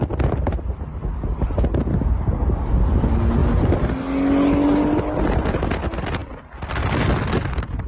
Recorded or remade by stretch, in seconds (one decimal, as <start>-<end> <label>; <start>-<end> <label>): 0.0-7.9 recorded